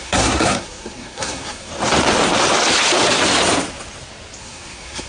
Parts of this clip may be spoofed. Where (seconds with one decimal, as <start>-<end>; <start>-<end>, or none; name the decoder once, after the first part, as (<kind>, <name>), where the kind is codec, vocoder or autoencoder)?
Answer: 0.0-1.7 (codec, SNAC); 4.4-5.1